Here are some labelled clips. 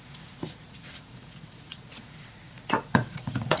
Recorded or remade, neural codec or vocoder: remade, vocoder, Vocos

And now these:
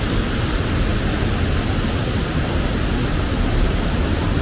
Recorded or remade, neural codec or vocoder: recorded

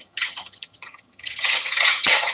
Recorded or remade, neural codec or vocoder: remade, vocoder, HiFi-GAN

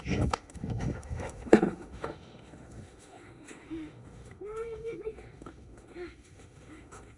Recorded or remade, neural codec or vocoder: remade, autoencoder, DAC-VAE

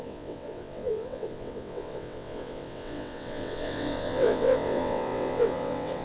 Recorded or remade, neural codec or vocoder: remade, vocoder, WaveNeXt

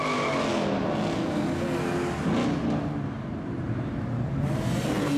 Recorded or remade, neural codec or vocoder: recorded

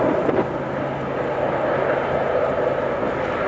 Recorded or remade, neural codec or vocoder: recorded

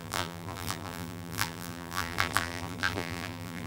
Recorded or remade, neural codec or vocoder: remade, vocoder, BigVGAN v2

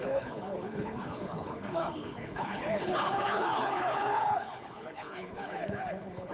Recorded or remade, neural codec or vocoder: remade, codec, HILCodec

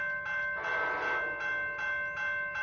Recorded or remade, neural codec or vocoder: recorded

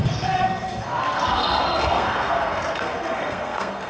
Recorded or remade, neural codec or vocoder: remade, codec, SNAC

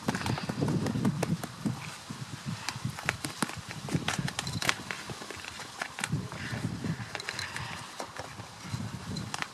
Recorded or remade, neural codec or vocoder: recorded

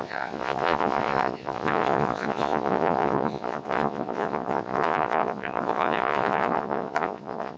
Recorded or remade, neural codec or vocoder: remade, vocoder, Vocos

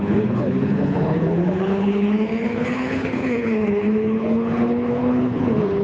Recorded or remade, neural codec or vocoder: remade, codec, HILCodec